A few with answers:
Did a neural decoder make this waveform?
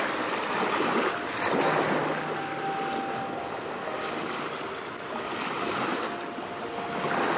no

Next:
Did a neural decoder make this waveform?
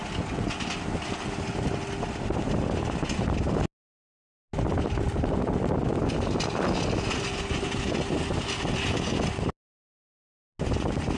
no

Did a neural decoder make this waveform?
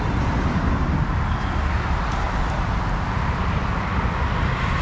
no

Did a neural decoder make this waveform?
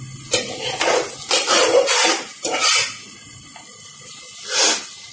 no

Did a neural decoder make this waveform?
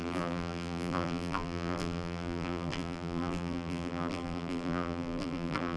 yes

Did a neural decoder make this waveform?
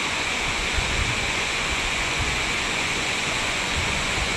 yes